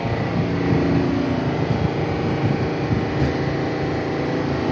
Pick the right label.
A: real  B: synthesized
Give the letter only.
A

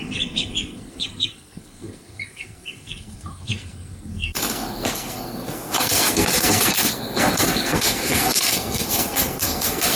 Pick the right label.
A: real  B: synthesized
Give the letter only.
B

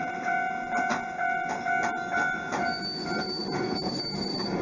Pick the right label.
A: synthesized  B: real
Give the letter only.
A